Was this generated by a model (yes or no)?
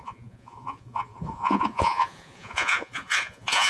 yes